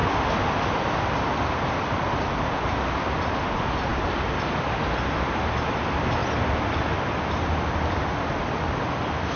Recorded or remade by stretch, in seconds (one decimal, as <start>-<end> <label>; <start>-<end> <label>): 0.0-9.4 recorded